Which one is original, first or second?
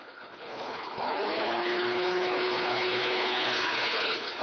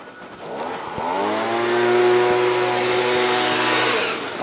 second